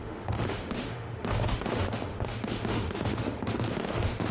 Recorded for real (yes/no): no